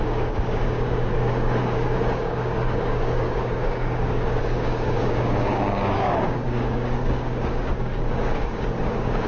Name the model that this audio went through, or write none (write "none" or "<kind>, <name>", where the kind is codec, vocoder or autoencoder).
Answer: codec, DAC